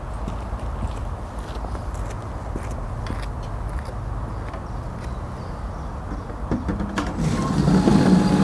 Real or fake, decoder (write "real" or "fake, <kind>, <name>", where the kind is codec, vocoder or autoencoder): real